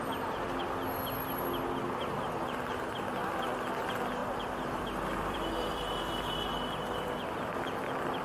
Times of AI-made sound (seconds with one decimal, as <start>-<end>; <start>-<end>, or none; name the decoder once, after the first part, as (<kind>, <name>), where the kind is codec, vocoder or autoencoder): 4.2-5.8 (vocoder, BigVGAN v2)